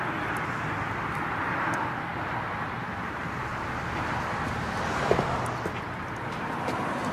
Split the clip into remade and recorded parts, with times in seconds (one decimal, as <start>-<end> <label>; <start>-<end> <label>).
0.0-7.1 recorded